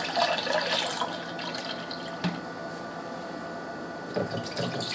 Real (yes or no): no